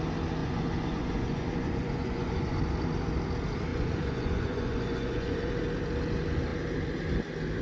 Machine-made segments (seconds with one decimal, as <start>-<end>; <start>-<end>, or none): 0.4-2.6; 3.7-5.5